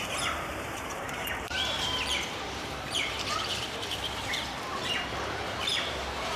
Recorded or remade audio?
remade